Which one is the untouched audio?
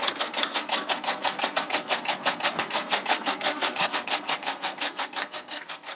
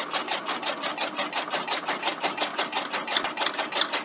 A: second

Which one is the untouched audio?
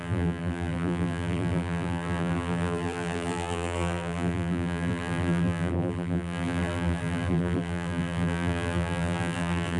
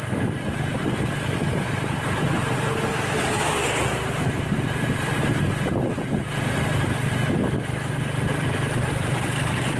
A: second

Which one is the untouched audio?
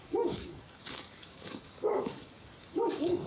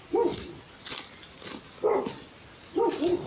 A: second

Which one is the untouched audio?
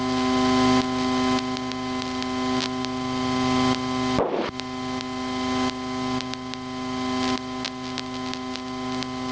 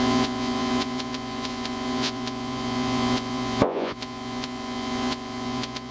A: first